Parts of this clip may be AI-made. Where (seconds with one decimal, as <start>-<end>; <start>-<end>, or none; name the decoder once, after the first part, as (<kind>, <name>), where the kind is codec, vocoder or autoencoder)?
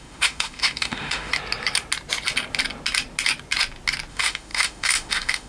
0.0-1.3 (autoencoder, DAC-VAE); 4.1-5.5